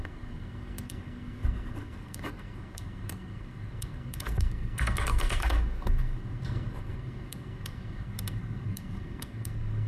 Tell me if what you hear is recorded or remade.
remade